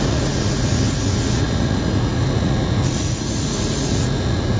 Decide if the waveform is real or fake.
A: fake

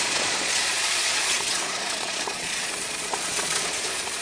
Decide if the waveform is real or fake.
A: fake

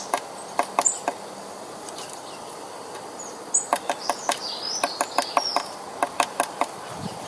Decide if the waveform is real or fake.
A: real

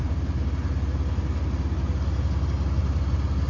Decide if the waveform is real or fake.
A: real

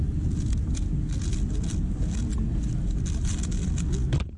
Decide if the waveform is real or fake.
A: real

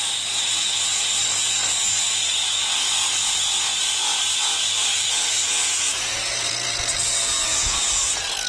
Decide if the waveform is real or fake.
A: fake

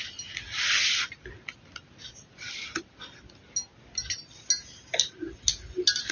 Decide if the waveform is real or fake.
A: real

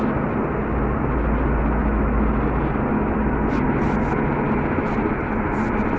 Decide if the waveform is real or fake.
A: real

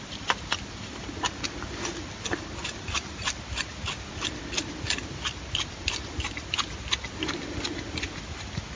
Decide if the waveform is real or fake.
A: real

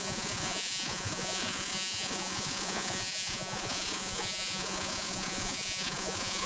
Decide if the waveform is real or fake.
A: fake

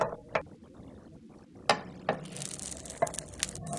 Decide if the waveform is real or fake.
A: real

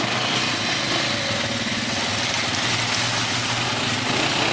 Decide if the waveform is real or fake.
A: real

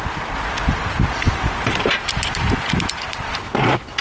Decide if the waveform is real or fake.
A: real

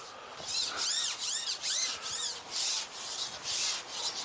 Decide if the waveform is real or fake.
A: real